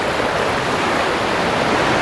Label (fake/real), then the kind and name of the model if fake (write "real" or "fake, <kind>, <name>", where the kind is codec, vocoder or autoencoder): real